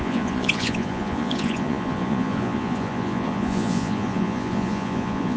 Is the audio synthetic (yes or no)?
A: yes